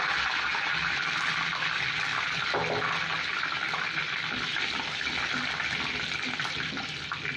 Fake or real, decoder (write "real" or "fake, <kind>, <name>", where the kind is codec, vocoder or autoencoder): real